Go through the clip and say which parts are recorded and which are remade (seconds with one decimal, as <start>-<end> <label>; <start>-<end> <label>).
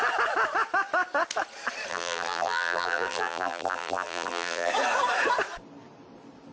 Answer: 0.0-1.9 recorded; 1.9-4.7 remade; 4.7-6.5 recorded